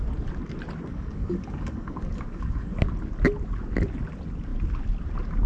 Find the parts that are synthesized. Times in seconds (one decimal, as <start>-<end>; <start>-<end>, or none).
0.9-2.7